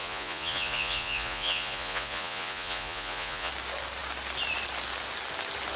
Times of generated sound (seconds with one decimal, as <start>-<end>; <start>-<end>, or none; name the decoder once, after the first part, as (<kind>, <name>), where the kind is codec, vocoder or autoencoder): 0.0-3.5 (vocoder, Vocos)